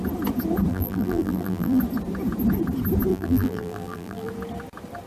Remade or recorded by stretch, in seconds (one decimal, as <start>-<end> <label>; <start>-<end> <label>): 0.0-0.7 recorded; 0.7-1.8 remade; 1.8-3.1 recorded; 3.1-4.3 remade; 4.3-5.1 recorded